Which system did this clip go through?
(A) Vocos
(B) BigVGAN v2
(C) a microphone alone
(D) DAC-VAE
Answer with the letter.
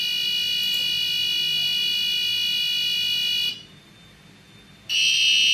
C